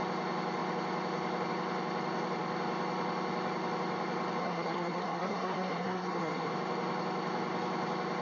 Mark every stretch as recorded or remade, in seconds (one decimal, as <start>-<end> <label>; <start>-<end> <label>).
0.0-4.4 recorded; 4.4-6.5 remade; 6.5-8.2 recorded